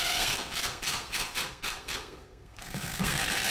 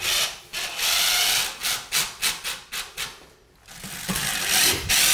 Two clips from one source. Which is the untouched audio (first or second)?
second